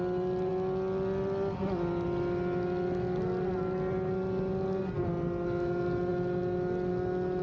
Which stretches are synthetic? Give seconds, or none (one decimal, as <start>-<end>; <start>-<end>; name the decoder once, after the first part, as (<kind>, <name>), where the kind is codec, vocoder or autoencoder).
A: none